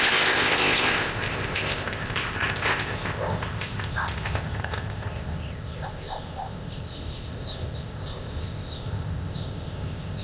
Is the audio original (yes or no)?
no